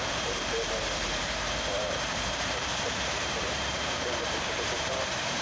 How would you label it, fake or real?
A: fake